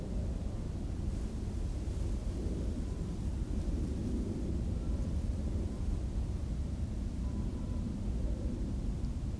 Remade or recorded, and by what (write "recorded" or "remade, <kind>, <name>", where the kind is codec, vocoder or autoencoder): recorded